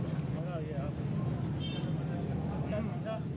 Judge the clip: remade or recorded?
recorded